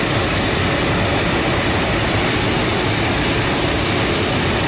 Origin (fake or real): real